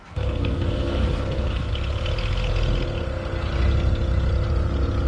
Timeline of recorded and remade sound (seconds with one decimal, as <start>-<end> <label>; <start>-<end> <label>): 0.0-1.7 remade; 1.7-5.1 recorded

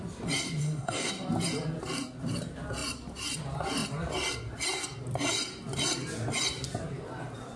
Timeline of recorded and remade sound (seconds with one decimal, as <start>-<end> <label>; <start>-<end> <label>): 0.0-0.6 recorded; 0.6-1.1 remade; 1.1-7.6 recorded

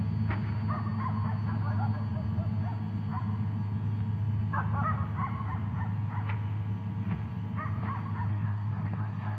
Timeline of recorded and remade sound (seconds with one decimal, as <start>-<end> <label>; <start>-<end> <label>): 0.0-8.3 recorded; 8.3-9.4 remade

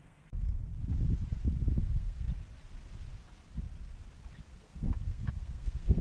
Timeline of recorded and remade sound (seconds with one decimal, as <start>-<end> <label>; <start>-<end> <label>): 0.0-0.7 remade; 0.7-1.7 recorded; 1.7-2.3 remade; 2.3-4.5 recorded; 4.5-6.0 remade

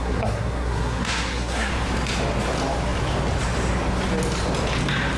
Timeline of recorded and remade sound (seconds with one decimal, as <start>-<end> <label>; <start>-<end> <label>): 0.0-1.7 remade; 1.7-5.2 recorded